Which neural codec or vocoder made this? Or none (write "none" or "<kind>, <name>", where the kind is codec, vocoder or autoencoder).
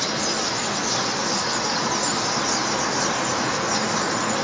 none